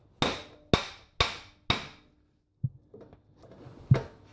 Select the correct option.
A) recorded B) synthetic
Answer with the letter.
A